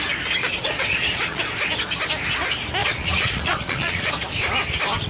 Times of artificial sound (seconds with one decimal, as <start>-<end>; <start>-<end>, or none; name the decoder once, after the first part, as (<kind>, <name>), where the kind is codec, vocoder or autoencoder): 0.4-1.4 (vocoder, Vocos); 2.8-4.1